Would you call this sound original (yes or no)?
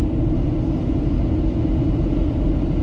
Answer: yes